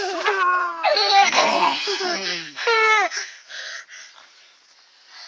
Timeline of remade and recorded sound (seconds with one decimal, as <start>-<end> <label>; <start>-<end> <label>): 0.0-0.6 recorded; 0.6-3.8 remade; 3.8-5.3 recorded